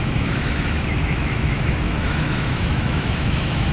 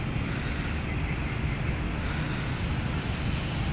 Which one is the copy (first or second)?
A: first